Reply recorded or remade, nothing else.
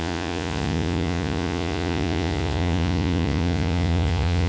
remade